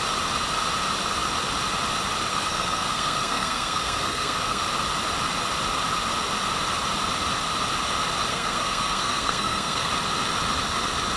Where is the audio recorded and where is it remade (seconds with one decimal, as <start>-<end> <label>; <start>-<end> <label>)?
0.0-2.3 recorded; 2.3-4.6 remade; 4.6-8.3 recorded; 8.3-9.9 remade; 9.9-11.2 recorded